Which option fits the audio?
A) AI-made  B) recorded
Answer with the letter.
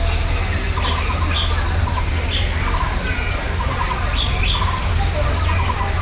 B